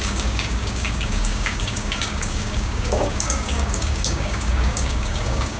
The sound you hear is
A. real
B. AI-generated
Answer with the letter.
B